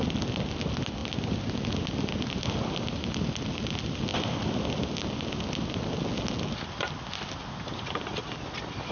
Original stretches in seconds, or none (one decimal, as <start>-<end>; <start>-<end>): 0.0-8.9